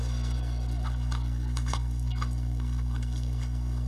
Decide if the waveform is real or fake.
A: fake